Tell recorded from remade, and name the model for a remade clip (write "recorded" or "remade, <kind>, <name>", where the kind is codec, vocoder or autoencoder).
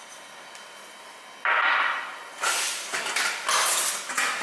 recorded